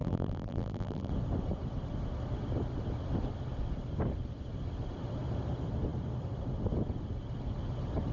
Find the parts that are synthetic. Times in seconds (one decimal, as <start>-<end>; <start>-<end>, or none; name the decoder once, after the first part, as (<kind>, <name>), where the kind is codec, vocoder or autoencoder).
0.0-1.1 (vocoder, BigVGAN v2)